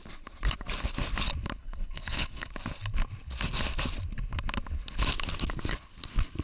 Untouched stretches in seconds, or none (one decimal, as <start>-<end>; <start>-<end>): 0.0-1.6; 2.5-6.4